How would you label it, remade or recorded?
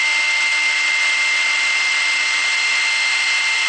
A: recorded